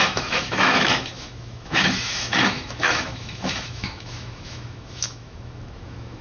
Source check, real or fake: fake